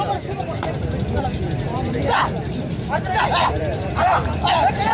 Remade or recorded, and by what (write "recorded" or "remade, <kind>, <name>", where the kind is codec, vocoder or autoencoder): remade, vocoder, BigVGAN v2